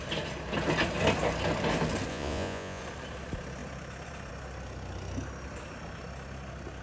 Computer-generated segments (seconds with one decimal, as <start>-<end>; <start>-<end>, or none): 2.1-2.8